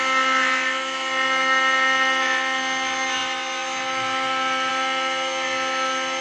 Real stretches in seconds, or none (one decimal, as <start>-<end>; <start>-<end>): 0.0-6.2